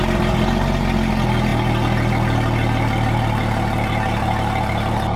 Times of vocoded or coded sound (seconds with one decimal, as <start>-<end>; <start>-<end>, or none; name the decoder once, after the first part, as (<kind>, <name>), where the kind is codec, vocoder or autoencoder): none

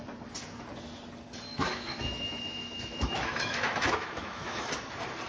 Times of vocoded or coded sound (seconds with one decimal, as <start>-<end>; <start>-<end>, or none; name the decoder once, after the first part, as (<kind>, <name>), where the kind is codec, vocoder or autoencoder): 1.5-4.7 (autoencoder, DAC-VAE)

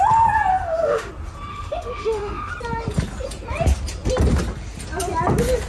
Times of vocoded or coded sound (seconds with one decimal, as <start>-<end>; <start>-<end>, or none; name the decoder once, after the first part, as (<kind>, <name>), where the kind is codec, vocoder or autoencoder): 0.5-1.1 (autoencoder, DAC-VAE); 1.5-2.5

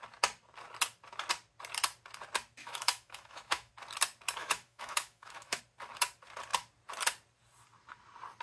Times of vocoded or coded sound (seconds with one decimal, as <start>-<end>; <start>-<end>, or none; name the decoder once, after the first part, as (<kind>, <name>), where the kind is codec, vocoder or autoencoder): 2.6-3.7 (autoencoder, DAC-VAE); 4.4-5.6